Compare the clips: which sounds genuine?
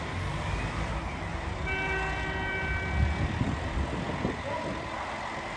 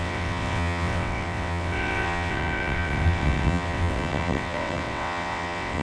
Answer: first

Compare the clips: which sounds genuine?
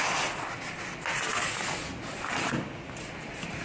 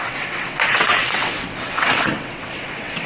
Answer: first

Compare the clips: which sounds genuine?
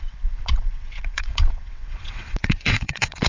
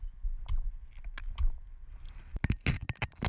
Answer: second